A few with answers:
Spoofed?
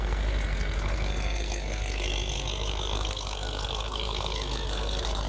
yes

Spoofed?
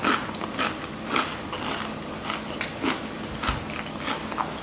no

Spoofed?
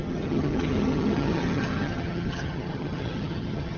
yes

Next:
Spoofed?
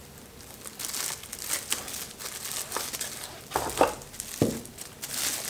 no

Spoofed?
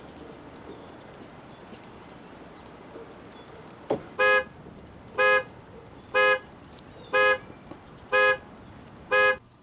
no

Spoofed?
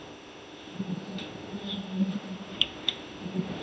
yes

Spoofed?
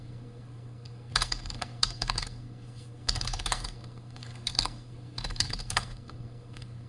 yes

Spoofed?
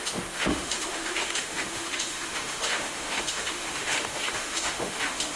yes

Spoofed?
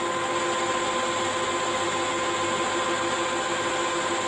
no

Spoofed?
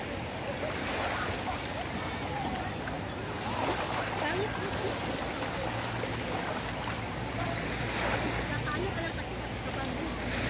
no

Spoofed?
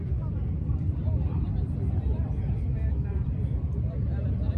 yes